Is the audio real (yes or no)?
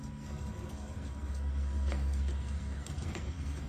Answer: no